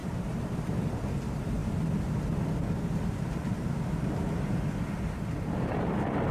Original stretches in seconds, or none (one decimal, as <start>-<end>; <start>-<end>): 1.0-6.3